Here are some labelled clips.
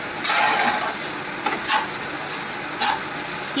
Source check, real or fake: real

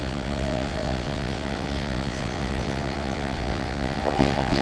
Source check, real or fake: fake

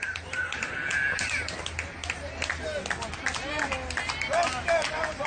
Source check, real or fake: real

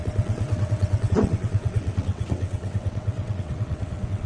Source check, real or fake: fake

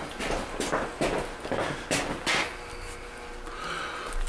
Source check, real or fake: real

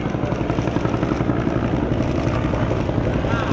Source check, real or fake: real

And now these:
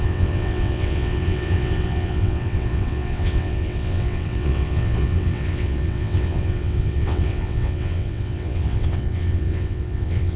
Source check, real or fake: fake